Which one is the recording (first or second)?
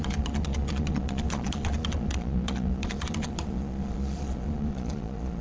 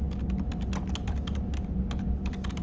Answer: second